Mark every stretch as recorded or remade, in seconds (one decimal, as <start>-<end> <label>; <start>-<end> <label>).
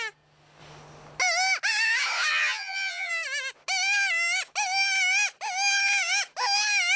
0.0-2.3 recorded; 2.3-3.1 remade; 3.1-7.0 recorded